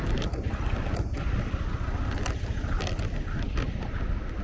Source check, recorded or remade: recorded